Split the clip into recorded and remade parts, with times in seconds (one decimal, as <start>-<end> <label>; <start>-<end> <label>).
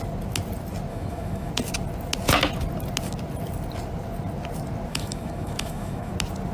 0.0-0.9 recorded; 0.9-1.5 remade; 1.5-4.9 recorded; 4.9-6.1 remade; 6.1-6.5 recorded